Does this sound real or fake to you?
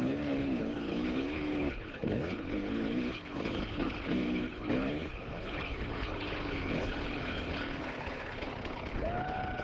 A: fake